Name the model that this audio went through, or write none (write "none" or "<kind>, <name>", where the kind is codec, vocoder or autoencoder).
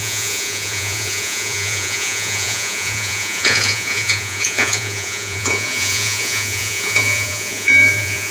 vocoder, Vocos